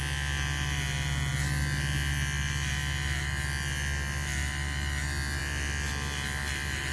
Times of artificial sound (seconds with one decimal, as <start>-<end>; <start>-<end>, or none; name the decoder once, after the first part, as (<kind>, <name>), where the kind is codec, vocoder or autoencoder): none